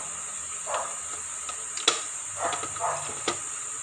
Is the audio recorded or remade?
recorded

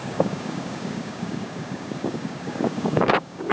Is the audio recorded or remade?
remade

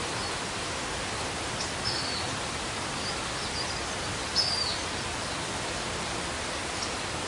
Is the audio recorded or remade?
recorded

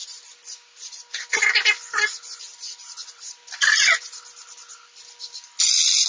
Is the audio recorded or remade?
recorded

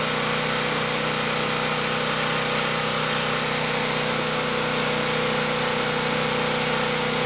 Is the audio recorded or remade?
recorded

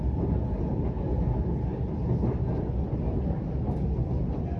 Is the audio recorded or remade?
recorded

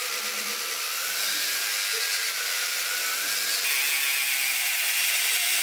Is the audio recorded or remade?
recorded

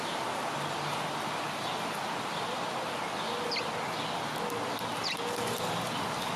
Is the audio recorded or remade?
recorded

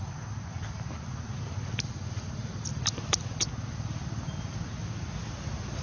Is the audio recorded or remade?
recorded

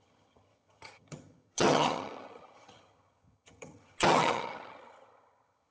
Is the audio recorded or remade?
remade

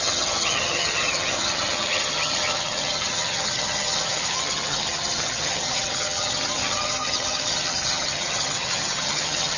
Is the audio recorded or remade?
remade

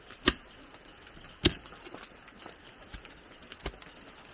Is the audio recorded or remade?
recorded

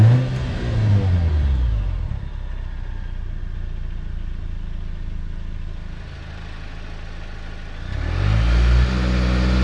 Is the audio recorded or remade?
recorded